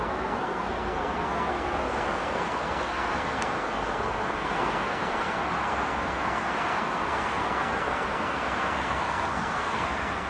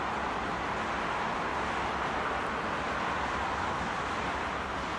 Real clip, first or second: second